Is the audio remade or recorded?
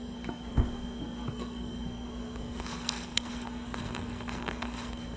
remade